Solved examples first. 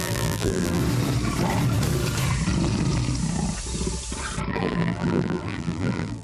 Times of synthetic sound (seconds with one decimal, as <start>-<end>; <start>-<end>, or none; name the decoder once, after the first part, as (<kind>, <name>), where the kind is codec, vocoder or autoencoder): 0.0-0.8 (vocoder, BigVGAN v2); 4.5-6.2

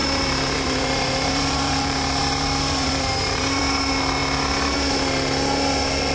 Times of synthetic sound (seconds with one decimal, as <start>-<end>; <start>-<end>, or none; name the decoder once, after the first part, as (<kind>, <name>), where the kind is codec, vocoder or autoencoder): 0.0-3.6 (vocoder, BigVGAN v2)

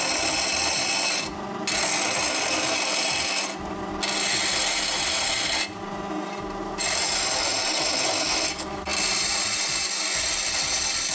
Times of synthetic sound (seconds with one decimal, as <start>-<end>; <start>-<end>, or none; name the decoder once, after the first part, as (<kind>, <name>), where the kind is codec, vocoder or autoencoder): none